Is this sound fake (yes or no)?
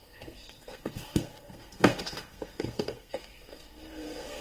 yes